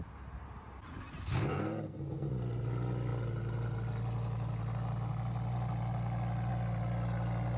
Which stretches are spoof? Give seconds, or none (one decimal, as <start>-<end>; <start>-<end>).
1.3-2.3